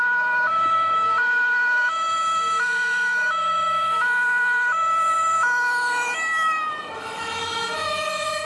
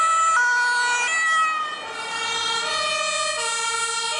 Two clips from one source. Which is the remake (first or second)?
first